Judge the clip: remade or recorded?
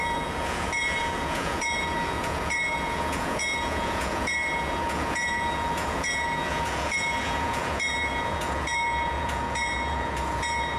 remade